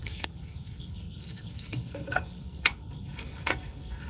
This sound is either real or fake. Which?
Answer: fake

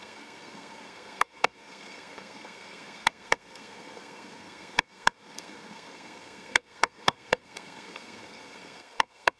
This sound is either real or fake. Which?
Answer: fake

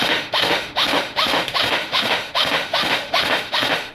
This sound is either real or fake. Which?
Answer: fake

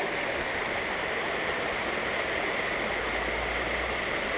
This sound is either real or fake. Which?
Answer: real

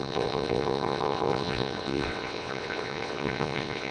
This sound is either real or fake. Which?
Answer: fake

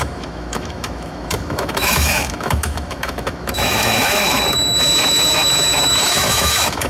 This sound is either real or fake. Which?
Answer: fake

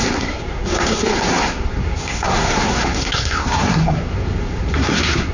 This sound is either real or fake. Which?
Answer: fake